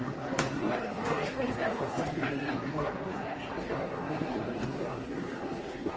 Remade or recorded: remade